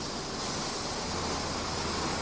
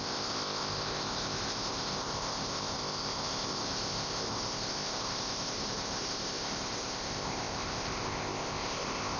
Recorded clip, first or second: first